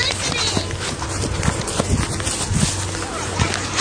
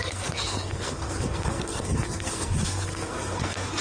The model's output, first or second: second